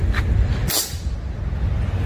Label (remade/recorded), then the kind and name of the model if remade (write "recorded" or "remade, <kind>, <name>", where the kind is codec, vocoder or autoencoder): recorded